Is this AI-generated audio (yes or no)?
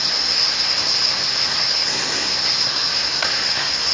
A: yes